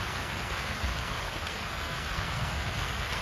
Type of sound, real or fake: fake